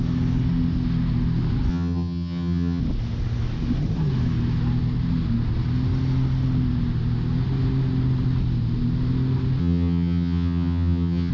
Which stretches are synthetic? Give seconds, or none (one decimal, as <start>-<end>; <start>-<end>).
1.7-2.8; 9.6-11.3